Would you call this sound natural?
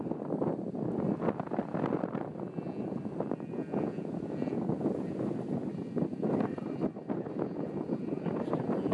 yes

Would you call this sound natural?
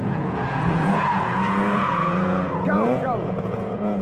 no